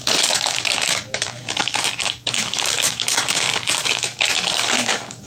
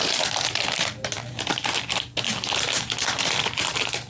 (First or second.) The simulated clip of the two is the first